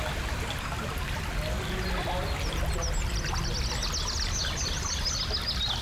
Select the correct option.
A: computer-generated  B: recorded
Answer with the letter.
B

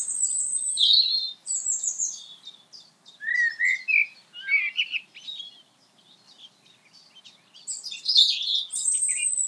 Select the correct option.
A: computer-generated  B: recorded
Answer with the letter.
B